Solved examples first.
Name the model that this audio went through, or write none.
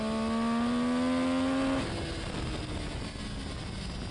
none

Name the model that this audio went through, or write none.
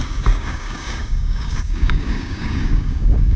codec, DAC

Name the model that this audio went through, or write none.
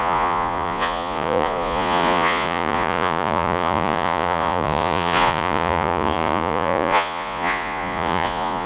vocoder, Vocos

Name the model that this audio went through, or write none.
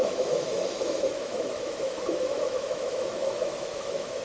autoencoder, DAC-VAE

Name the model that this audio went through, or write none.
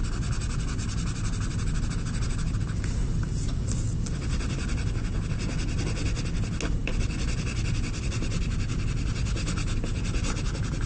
none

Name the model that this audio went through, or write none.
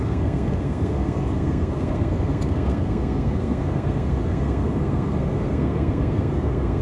codec, SNAC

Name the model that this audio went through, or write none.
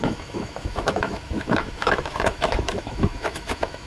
autoencoder, DAC-VAE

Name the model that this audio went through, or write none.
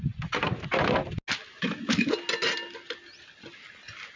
none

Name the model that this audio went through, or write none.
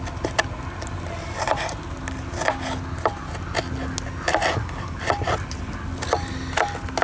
none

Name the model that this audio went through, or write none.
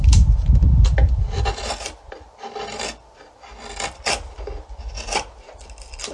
none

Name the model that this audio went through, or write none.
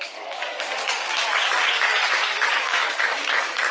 codec, DAC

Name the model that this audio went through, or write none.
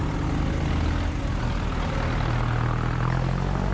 none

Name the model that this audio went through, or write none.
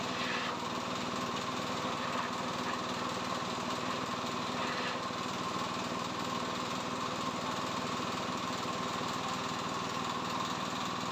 none